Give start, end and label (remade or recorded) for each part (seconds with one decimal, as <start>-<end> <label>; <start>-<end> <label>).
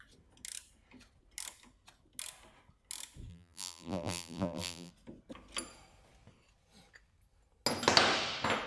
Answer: 0.0-3.3 recorded; 3.3-4.9 remade; 4.9-8.7 recorded